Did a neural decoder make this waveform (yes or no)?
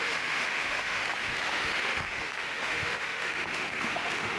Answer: yes